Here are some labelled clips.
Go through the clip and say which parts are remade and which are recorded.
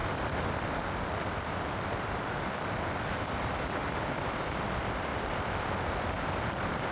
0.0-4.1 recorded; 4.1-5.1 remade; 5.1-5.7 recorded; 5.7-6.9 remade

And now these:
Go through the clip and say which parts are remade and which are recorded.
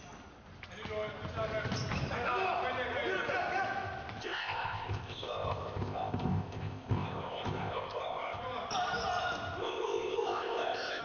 0.0-4.2 recorded; 4.2-8.4 remade; 8.4-9.6 recorded; 9.6-11.0 remade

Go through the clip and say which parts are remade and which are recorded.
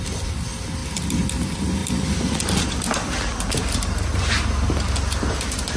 0.0-5.8 recorded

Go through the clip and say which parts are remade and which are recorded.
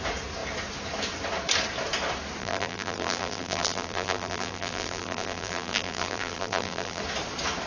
0.0-2.4 recorded; 2.4-7.0 remade; 7.0-7.7 recorded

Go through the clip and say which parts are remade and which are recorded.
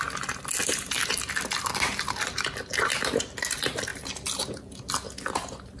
0.0-5.8 recorded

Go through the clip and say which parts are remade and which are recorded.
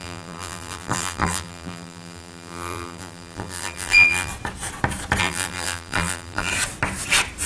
0.0-4.3 remade; 4.3-5.2 recorded; 5.2-6.5 remade; 6.5-7.5 recorded